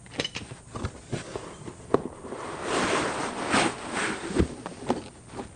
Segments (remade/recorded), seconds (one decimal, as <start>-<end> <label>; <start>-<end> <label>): 0.0-5.6 recorded